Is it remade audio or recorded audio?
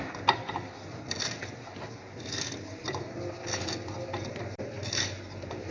recorded